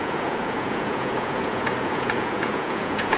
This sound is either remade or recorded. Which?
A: remade